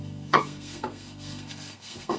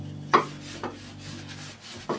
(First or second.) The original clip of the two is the second